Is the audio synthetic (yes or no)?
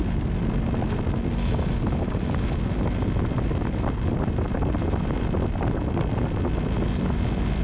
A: no